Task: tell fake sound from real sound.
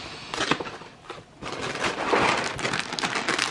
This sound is real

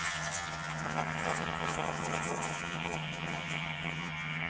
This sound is fake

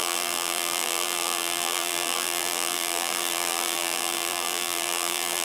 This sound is fake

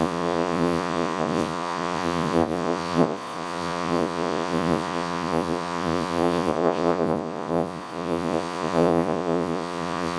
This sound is fake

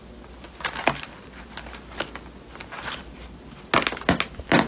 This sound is real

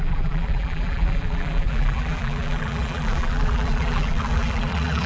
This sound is fake